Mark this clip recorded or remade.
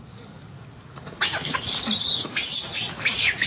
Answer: recorded